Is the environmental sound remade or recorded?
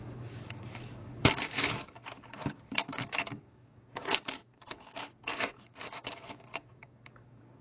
remade